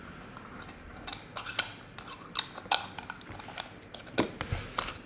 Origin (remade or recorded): recorded